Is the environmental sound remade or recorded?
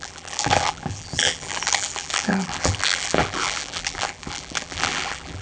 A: remade